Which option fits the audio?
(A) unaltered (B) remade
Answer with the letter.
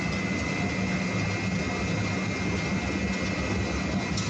A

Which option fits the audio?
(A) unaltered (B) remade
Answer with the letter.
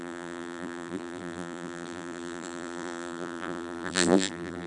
B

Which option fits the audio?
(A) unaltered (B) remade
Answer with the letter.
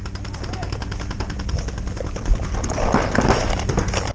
B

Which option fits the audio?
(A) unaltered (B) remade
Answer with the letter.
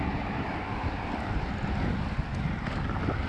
A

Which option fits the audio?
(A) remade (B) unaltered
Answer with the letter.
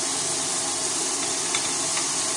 A